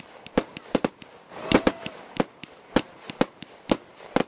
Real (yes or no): no